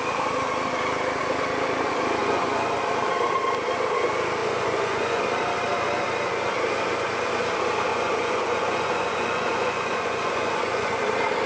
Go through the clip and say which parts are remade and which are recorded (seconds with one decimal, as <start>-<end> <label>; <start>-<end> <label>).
0.0-2.2 recorded; 2.2-2.8 remade; 2.8-4.4 recorded; 4.4-5.2 remade; 5.2-7.9 recorded; 7.9-11.0 remade; 11.0-11.5 recorded